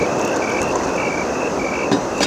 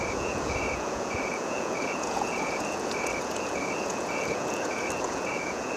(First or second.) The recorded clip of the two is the first